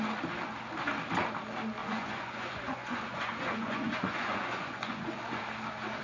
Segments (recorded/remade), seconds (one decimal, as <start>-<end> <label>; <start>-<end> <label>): 0.0-1.8 recorded; 1.8-5.4 remade; 5.4-6.0 recorded